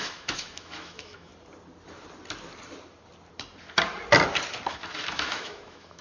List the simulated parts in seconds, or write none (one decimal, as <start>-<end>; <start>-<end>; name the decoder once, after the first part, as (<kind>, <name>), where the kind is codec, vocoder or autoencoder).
0.0-1.3 (autoencoder, DAC-VAE); 4.7-6.0

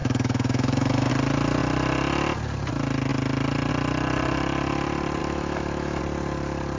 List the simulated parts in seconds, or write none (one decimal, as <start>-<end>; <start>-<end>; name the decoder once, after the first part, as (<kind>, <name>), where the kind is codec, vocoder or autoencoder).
0.0-1.1 (autoencoder, DAC-VAE); 5.2-6.0

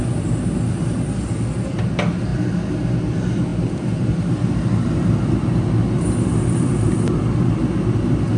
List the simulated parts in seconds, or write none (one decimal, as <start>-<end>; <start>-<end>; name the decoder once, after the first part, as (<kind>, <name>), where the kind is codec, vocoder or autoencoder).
none